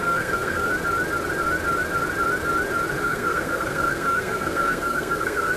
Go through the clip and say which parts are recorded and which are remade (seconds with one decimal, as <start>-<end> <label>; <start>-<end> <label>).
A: 0.0-0.7 remade; 0.7-3.0 recorded; 3.0-5.6 remade